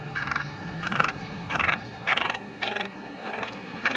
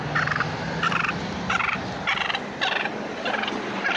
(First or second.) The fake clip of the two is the first